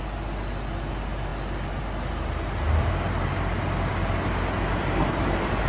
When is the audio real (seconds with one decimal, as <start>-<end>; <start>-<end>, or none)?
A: 0.0-5.7